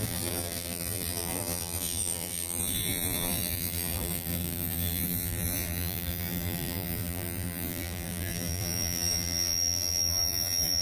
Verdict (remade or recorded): remade